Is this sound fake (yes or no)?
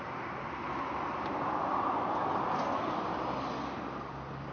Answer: no